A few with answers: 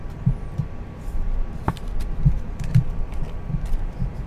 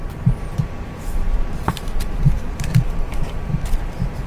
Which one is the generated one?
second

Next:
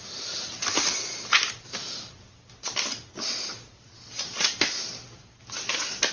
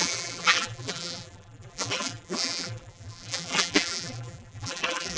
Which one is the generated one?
second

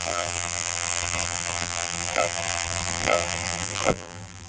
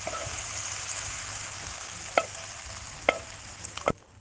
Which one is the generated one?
first